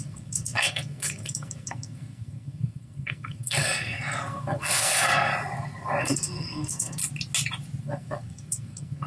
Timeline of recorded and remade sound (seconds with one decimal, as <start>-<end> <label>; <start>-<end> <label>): 0.0-5.3 remade; 5.3-6.0 recorded; 6.0-7.0 remade; 7.0-7.8 recorded; 7.8-9.1 remade